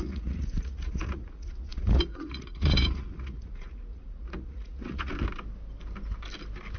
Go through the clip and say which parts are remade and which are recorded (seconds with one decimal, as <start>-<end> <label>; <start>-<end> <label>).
0.0-5.1 remade; 5.1-6.8 recorded